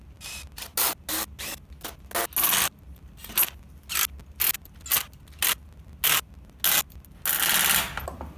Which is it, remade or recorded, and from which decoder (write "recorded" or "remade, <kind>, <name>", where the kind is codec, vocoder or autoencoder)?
recorded